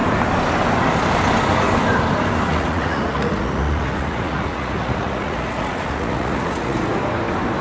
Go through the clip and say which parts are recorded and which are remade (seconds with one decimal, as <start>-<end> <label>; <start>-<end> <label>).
0.0-2.5 recorded; 2.5-6.8 remade; 6.8-7.6 recorded